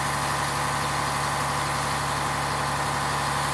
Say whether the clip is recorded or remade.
recorded